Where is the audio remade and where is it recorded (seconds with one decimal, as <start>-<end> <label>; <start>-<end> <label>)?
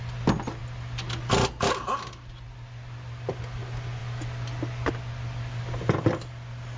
0.0-6.8 recorded